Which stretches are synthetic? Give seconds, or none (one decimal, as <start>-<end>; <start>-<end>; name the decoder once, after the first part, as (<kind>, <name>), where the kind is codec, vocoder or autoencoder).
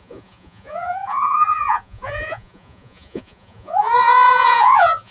0.0-5.1 (vocoder, Vocos)